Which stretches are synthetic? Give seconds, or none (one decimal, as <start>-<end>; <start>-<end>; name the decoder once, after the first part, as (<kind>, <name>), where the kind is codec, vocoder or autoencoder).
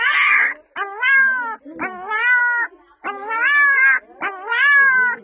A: none